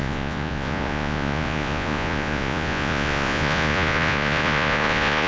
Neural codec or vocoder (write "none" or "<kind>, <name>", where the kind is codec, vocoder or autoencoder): vocoder, Vocos